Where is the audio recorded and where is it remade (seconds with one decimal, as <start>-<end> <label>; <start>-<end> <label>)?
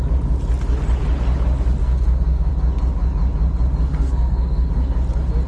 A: 0.0-1.8 recorded; 1.8-2.5 remade; 2.5-3.9 recorded; 3.9-4.7 remade; 4.7-5.5 recorded